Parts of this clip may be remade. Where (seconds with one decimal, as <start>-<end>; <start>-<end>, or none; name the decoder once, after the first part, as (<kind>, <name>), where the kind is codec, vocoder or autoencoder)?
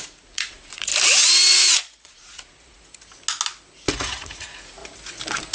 0.0-0.9 (vocoder, Vocos); 1.5-2.9; 3.9-4.8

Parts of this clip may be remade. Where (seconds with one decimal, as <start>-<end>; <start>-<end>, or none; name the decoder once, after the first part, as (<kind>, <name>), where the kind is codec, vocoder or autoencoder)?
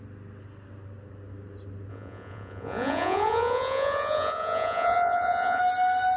1.9-5.6 (vocoder, Vocos)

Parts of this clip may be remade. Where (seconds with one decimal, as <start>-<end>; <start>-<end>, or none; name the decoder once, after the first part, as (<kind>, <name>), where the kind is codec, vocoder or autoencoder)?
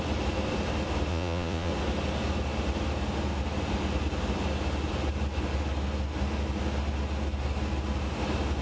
1.1-1.7 (vocoder, Vocos)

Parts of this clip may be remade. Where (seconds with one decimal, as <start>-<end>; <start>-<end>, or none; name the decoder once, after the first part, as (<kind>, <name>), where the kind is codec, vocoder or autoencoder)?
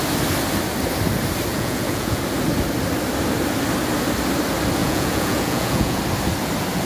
1.5-2.2 (vocoder, Vocos); 4.8-6.0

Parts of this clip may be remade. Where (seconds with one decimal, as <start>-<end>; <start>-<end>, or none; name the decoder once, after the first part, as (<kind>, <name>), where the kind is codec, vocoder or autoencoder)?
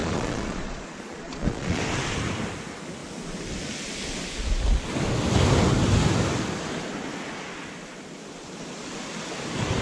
0.0-1.8 (vocoder, Vocos)